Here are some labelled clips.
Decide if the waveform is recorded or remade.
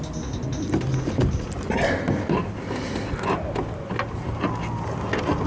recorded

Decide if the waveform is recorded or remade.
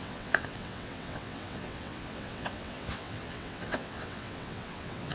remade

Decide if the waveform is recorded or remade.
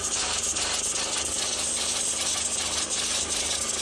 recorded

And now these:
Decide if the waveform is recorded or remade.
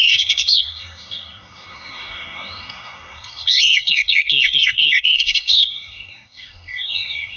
remade